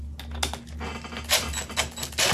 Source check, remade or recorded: recorded